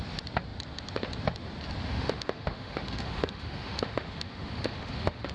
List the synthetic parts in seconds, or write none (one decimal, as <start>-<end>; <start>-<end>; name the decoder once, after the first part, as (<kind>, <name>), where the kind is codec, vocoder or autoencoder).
1.9-5.3 (autoencoder, DAC-VAE)